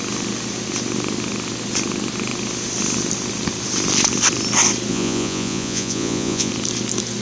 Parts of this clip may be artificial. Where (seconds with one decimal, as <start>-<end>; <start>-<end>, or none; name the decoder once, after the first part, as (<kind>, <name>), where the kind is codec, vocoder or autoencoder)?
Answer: 4.9-6.5 (vocoder, Vocos)